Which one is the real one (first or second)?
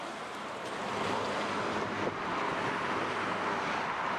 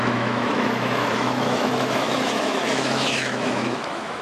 first